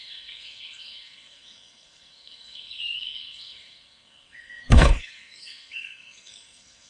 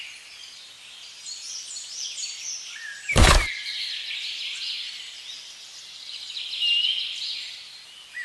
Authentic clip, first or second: second